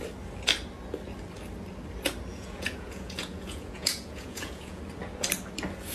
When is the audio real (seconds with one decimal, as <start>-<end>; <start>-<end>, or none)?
0.0-2.3; 4.8-5.9